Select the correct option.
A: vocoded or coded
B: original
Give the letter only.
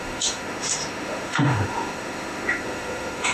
A